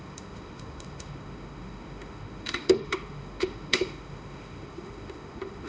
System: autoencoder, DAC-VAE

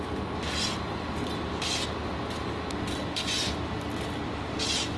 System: none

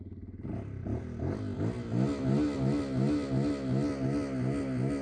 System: none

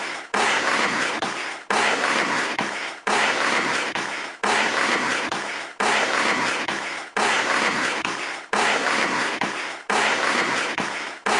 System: codec, SNAC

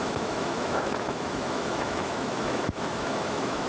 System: autoencoder, DAC-VAE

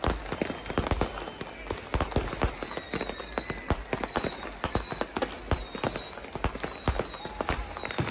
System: none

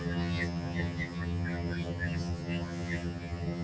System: vocoder, HiFi-GAN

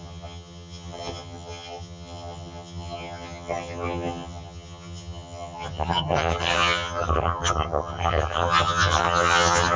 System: vocoder, HiFi-GAN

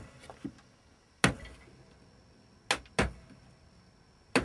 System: none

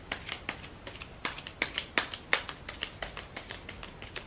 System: none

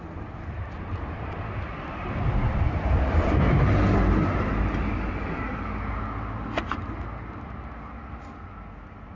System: none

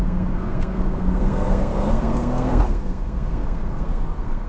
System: codec, SNAC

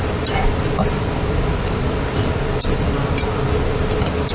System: none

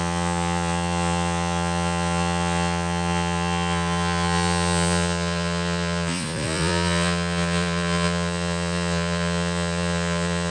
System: vocoder, Vocos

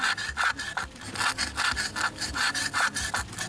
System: none